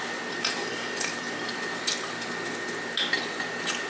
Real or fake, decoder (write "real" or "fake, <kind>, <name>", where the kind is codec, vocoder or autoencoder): real